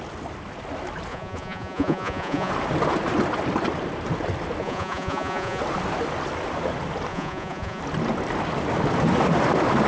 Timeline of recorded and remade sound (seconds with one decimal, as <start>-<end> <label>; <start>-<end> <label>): 0.0-1.1 recorded; 1.1-2.5 remade; 2.5-4.6 recorded; 4.6-5.6 remade; 5.6-7.1 recorded; 7.1-7.8 remade; 7.8-9.9 recorded